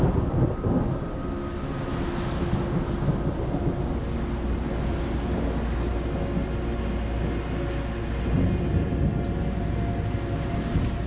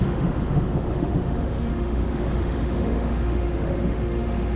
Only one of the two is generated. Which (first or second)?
second